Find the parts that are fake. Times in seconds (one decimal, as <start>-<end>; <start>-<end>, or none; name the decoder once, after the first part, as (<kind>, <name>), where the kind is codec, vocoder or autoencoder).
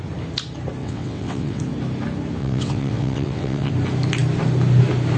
0.8-1.6 (vocoder, WaveNeXt); 2.4-3.7